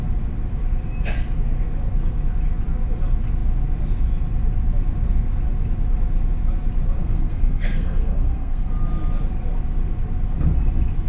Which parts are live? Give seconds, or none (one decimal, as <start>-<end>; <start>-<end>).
0.0-7.0; 8.7-11.1